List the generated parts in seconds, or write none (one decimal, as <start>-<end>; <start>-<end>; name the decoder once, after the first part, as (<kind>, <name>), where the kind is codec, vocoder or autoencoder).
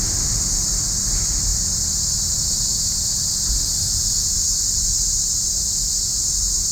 none